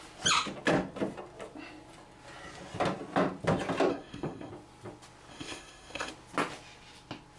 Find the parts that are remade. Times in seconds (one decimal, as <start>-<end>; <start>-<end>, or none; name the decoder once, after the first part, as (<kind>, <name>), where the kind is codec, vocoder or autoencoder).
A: 3.9-4.5 (codec, SNAC); 5.3-6.1